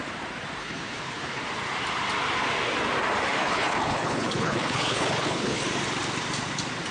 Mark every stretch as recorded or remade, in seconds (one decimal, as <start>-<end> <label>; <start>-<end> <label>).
0.0-0.6 recorded; 0.6-1.4 remade; 1.4-3.4 recorded; 3.4-5.6 remade; 5.6-6.9 recorded